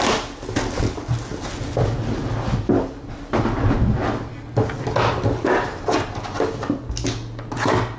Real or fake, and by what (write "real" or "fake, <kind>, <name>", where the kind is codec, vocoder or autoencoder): real